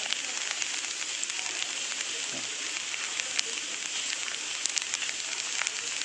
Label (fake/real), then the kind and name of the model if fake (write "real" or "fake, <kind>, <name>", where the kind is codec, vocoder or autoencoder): real